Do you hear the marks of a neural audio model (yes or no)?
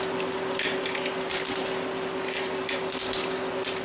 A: no